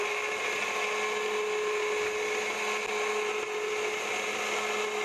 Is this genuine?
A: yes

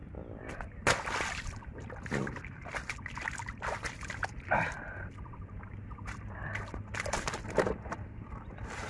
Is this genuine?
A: yes